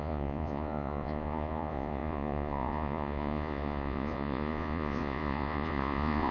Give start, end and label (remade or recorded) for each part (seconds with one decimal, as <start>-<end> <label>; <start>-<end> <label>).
0.0-6.3 remade